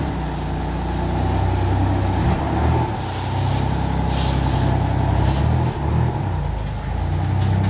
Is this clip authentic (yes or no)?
yes